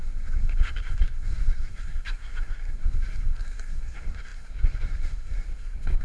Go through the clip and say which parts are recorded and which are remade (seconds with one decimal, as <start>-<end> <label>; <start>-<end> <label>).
0.0-6.0 remade